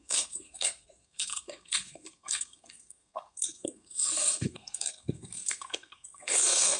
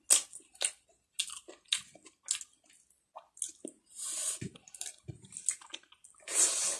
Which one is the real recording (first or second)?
second